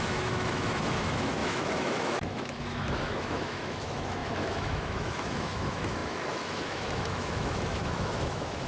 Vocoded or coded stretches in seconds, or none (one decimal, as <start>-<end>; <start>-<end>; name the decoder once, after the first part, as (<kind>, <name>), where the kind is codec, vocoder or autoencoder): 0.0-8.7 (autoencoder, DAC-VAE)